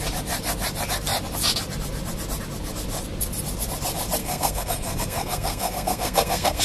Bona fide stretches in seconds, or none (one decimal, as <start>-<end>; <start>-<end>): 0.0-4.2